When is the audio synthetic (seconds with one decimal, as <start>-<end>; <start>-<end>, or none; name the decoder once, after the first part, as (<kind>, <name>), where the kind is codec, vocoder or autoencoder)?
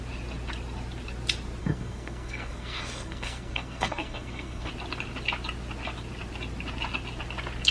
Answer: 1.6-4.7 (codec, SNAC)